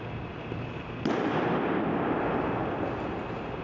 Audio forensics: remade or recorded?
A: recorded